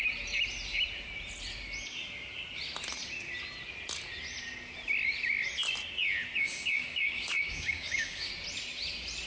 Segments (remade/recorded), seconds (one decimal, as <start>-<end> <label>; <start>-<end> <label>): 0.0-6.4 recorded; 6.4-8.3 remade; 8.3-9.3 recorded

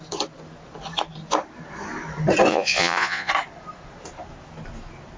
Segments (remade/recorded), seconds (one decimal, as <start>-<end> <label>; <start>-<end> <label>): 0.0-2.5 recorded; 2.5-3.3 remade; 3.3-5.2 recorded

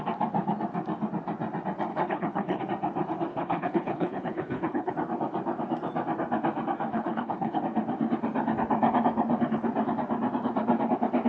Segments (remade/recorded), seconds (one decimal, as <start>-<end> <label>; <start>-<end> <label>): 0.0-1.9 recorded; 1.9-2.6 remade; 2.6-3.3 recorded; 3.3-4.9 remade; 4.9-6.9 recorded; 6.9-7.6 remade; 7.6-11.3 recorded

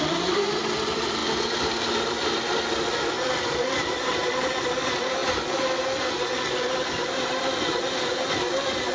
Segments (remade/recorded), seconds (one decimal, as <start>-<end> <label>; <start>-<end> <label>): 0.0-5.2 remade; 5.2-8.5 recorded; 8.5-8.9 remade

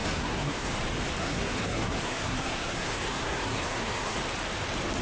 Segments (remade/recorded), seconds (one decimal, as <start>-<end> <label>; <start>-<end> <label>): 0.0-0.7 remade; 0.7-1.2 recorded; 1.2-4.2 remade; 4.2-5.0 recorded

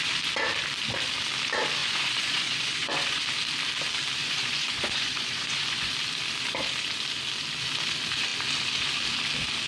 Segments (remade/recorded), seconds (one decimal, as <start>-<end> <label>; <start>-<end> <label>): 0.0-1.8 recorded; 1.8-3.2 remade; 3.2-4.2 recorded; 4.2-5.9 remade; 5.9-9.7 recorded